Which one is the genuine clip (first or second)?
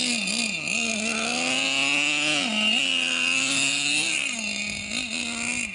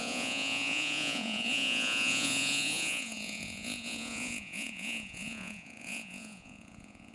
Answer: first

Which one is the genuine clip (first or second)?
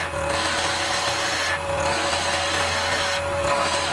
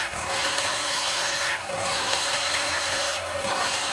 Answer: first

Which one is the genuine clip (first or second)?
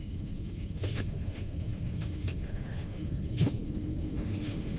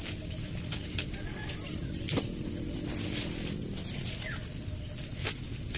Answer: second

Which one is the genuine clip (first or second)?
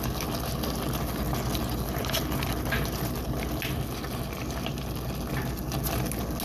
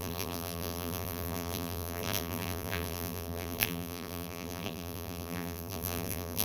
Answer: first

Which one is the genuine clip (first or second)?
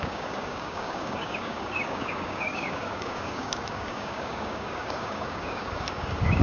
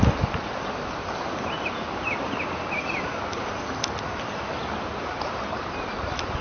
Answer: second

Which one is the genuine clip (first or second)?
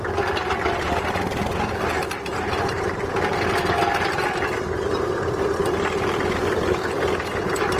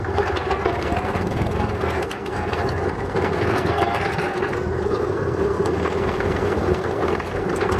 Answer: first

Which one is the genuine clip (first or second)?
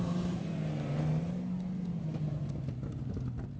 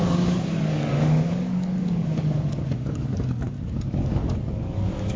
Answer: first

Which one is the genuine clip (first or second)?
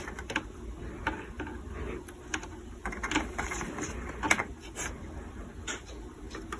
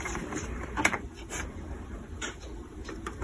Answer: first